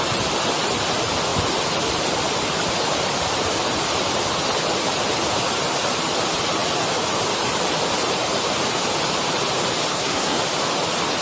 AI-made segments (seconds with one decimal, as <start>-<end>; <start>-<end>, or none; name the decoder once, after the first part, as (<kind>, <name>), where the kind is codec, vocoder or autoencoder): 9.9-10.4 (codec, SNAC)

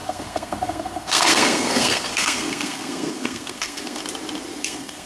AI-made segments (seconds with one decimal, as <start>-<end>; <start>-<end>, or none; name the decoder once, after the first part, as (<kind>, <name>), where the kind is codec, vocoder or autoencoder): 0.0-4.0 (codec, SNAC); 4.6-5.1

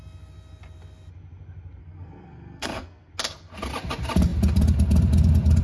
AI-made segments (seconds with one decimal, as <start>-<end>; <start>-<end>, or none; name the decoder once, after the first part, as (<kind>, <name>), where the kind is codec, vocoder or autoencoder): 1.8-3.1 (codec, SNAC)

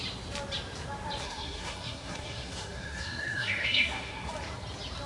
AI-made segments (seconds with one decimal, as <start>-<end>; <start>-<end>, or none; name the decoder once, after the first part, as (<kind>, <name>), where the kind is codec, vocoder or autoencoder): 1.2-4.3 (codec, SNAC)